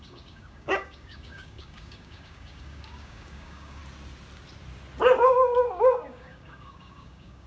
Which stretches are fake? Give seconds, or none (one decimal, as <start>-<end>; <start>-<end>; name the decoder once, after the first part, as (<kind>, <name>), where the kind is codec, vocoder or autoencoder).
0.0-3.8 (codec, DAC); 5.8-7.5